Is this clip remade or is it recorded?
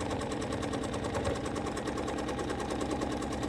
recorded